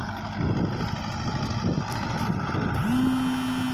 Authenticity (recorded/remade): recorded